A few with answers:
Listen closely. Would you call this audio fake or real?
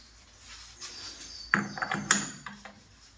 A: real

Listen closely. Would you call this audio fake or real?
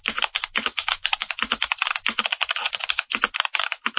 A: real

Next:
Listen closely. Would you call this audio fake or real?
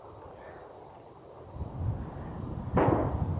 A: real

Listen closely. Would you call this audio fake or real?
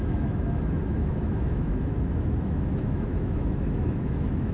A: fake